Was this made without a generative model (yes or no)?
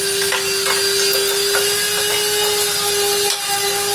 yes